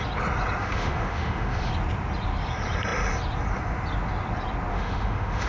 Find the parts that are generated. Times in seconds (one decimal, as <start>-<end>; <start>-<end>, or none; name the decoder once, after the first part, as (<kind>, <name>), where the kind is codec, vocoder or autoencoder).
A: 0.6-1.7 (autoencoder, DAC-VAE); 4.7-5.5